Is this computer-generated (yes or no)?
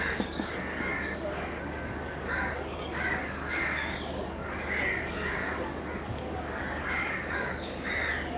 yes